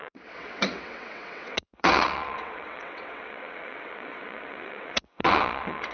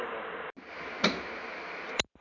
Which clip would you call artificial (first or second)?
first